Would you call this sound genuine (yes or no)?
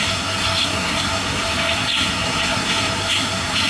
no